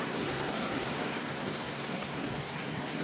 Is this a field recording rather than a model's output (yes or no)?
no